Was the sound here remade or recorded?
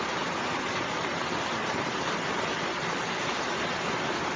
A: recorded